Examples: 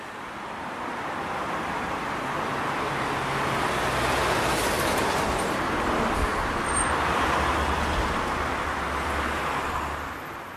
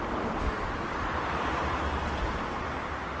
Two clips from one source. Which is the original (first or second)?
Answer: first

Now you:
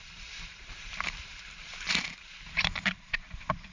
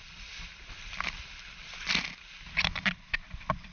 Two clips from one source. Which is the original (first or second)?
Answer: second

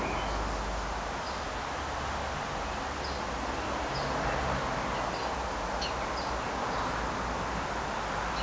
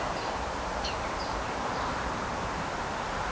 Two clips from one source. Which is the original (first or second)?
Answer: first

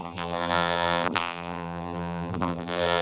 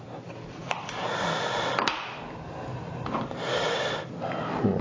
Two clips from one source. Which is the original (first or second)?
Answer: second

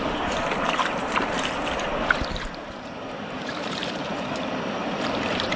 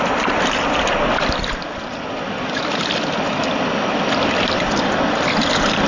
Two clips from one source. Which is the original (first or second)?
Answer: second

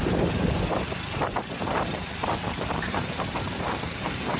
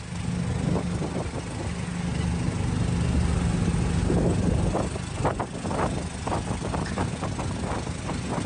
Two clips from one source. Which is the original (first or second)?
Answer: second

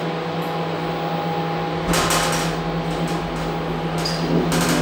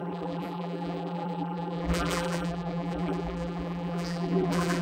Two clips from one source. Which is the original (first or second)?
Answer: first